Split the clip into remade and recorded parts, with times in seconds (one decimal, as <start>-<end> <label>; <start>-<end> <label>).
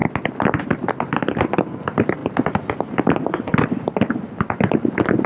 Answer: 0.0-0.9 remade; 0.9-5.3 recorded